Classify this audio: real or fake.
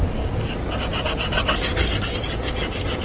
real